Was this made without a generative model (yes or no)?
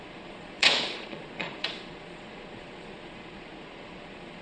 no